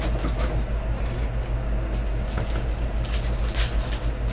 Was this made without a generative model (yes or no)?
yes